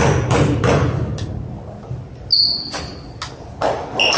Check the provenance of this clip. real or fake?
real